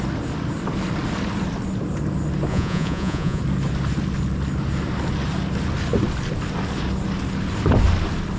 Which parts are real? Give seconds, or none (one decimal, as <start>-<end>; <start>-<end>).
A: 0.0-2.5; 3.4-8.4

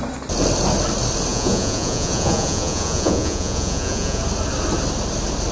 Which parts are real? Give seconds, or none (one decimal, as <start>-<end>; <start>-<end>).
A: 0.0-1.3; 4.2-5.5

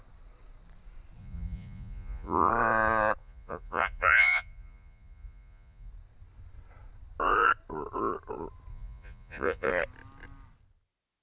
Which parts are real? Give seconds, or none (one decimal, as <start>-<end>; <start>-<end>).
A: 0.0-1.2; 2.5-3.2; 5.9-8.7; 9.7-11.2

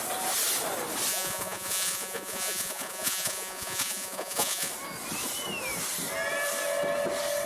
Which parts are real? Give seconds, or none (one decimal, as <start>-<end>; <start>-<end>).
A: 0.0-1.1; 4.7-7.5